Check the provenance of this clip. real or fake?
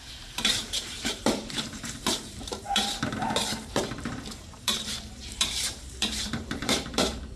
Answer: fake